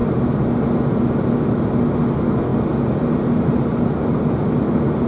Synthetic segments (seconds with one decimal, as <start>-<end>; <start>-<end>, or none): none

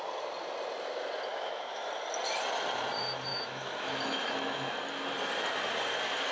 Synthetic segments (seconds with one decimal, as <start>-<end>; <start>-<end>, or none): 1.3-1.9; 3.3-4.8

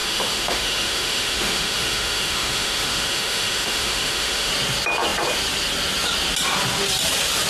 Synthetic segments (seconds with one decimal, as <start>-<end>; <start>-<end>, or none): 0.0-4.5

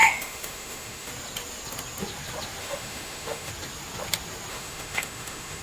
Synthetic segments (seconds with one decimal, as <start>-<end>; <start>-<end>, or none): 0.0-1.1; 2.6-3.5; 4.5-5.6

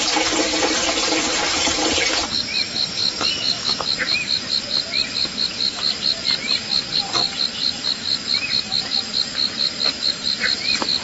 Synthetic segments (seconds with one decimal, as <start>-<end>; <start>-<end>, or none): none

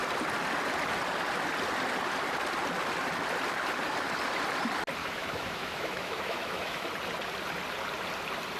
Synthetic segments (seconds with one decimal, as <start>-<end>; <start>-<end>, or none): 5.0-6.9

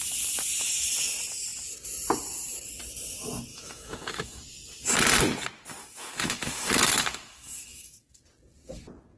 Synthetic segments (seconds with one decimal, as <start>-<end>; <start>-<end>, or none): 3.5-4.4; 5.8-8.2